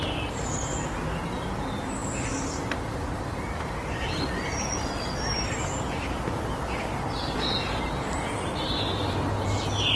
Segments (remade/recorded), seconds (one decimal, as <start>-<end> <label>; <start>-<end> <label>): 0.0-10.0 recorded